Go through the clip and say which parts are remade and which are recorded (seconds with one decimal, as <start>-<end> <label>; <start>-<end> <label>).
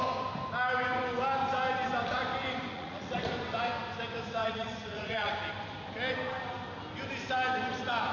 0.0-2.7 recorded; 2.7-3.2 remade; 3.2-4.4 recorded; 4.4-5.4 remade; 5.4-8.1 recorded